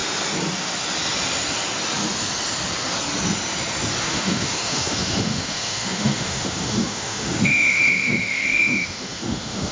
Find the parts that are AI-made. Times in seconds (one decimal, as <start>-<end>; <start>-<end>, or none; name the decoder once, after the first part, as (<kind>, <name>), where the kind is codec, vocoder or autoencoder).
4.0-9.7 (autoencoder, DAC-VAE)